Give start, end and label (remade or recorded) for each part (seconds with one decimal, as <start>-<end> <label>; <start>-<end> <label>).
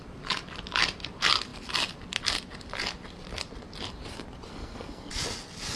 0.0-4.5 recorded; 4.5-5.1 remade; 5.1-5.8 recorded